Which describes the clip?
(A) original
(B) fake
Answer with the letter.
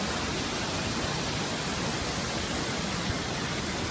A